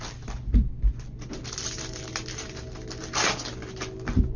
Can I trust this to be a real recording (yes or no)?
yes